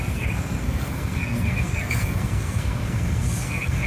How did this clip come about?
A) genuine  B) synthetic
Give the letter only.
B